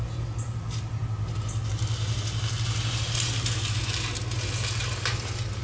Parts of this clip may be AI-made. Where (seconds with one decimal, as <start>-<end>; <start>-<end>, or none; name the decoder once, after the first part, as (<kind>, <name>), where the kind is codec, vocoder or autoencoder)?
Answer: none